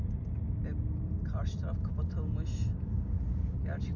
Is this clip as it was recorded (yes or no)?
yes